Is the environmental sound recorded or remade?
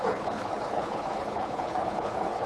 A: remade